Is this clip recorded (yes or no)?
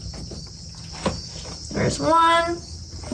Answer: yes